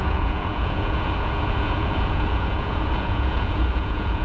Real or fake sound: fake